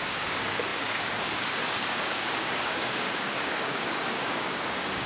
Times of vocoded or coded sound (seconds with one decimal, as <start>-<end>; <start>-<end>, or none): 0.0-5.1